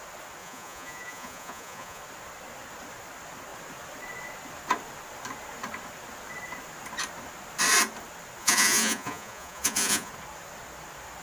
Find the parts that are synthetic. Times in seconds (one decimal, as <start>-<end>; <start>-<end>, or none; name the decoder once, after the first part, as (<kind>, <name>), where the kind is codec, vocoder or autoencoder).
0.4-2.0 (vocoder, Vocos); 8.4-10.1